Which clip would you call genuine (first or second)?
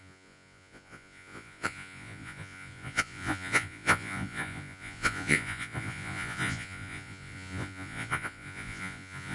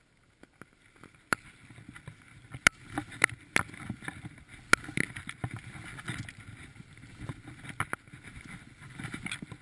second